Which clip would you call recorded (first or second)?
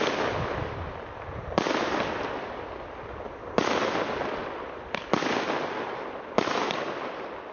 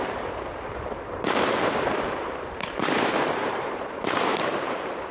first